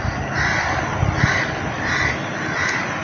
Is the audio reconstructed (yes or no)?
no